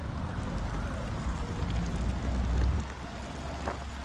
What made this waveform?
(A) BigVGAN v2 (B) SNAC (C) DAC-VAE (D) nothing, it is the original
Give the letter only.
D